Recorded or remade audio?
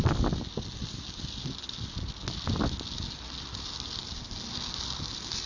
recorded